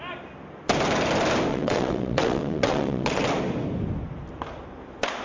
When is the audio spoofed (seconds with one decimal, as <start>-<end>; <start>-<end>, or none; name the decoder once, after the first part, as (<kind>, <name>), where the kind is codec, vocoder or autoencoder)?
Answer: 1.5-3.2 (vocoder, WaveNeXt)